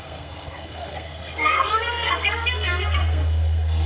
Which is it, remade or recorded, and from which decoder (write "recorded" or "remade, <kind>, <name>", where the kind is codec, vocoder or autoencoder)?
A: remade, codec, SNAC